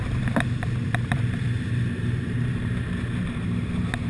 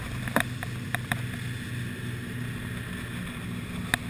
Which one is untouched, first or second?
second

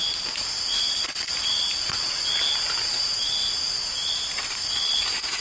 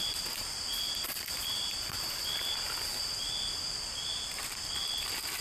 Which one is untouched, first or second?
first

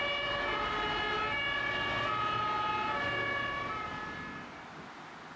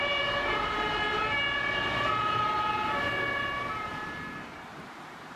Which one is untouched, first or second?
first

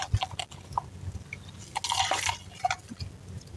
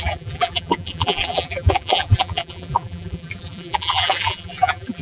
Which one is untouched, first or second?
first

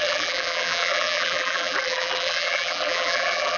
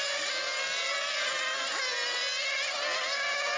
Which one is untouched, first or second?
second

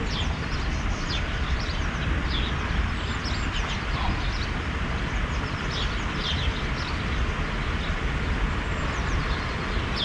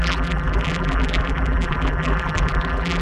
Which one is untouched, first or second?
first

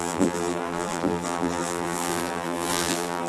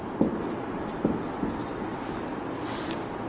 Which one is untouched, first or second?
second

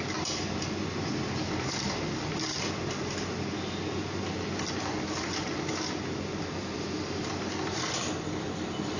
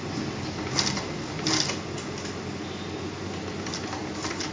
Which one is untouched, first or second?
second